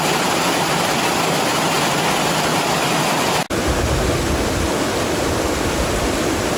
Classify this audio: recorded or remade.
recorded